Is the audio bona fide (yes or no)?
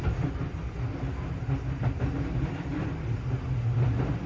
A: yes